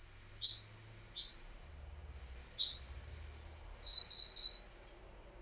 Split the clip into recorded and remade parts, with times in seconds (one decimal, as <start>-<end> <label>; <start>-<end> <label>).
0.0-1.3 recorded; 1.3-4.1 remade; 4.1-5.4 recorded